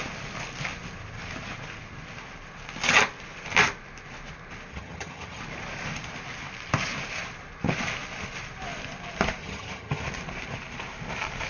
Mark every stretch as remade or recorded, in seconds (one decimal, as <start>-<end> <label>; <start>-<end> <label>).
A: 0.0-4.7 recorded; 4.7-5.4 remade; 5.4-9.4 recorded; 9.4-10.0 remade; 10.0-11.5 recorded